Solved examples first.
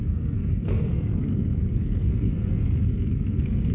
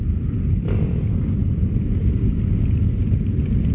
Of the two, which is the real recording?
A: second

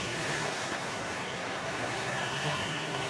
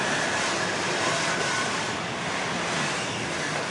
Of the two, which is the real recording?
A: second